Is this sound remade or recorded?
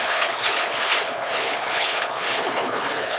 remade